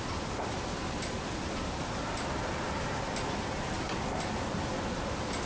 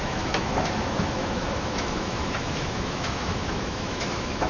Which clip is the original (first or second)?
first